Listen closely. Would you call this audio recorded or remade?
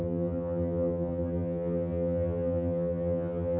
remade